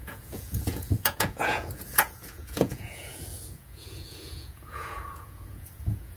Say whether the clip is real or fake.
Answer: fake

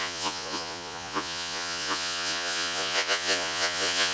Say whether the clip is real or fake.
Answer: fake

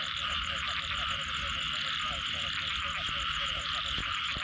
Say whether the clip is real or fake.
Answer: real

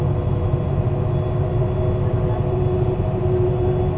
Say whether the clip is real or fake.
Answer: real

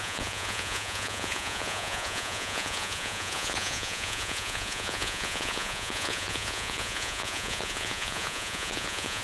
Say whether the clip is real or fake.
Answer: fake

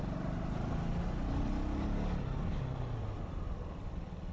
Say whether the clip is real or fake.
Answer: real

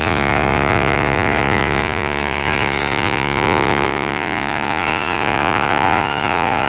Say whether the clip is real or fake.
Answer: fake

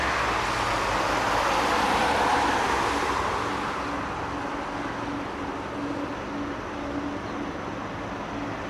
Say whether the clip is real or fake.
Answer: real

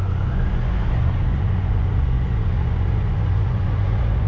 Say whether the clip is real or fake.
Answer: fake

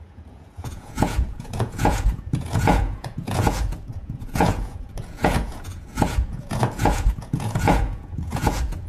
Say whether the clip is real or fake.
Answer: fake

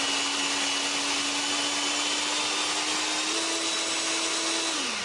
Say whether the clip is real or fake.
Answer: real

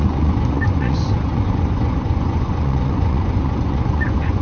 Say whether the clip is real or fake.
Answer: fake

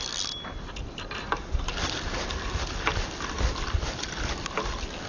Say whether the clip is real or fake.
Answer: real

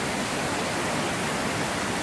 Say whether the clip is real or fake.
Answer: real